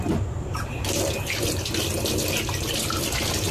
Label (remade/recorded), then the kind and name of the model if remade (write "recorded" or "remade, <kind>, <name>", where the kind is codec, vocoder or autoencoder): remade, vocoder, BigVGAN v2